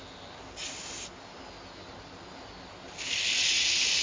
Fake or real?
real